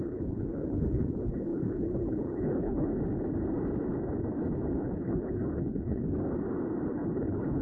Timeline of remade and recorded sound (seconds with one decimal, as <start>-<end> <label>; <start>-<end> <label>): 0.0-2.9 remade; 2.9-4.3 recorded; 4.3-6.0 remade; 6.0-6.9 recorded; 6.9-7.6 remade